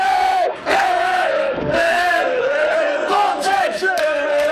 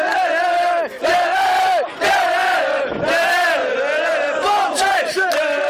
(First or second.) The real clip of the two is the second